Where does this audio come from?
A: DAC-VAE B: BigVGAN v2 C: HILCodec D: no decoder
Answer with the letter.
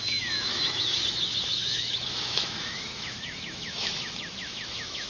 A